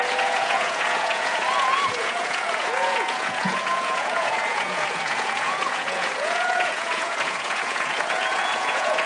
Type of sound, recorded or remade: remade